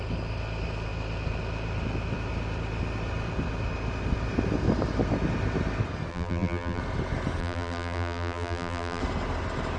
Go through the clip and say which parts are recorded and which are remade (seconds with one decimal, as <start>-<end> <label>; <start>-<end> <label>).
0.0-6.1 recorded; 6.1-6.8 remade; 6.8-7.4 recorded; 7.4-9.0 remade; 9.0-9.8 recorded

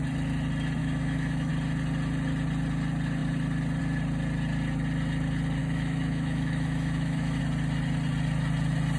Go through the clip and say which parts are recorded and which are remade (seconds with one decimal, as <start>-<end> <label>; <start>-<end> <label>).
0.0-0.8 recorded; 0.8-1.5 remade; 1.5-5.6 recorded; 5.6-7.4 remade; 7.4-9.0 recorded